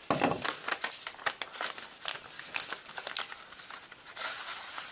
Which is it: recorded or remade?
recorded